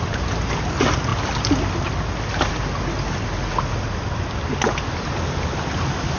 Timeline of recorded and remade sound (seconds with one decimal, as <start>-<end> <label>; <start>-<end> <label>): 0.0-6.2 recorded